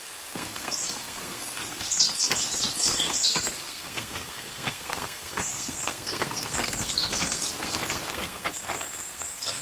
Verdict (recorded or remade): remade